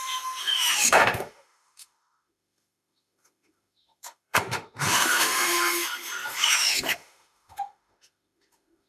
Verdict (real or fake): fake